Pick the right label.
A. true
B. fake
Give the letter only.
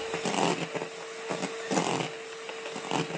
A